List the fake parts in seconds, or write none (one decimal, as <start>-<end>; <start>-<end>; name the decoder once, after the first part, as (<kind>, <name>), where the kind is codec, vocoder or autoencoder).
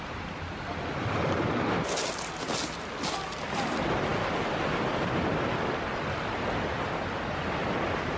none